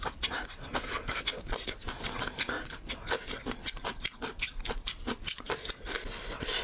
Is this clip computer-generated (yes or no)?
no